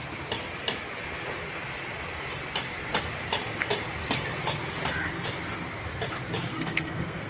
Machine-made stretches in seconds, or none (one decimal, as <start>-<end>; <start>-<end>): 6.5-7.3